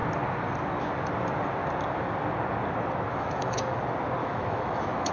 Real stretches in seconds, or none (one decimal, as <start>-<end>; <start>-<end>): 0.0-3.1; 3.8-4.2